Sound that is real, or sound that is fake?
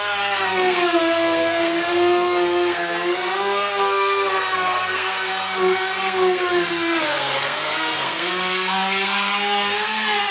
fake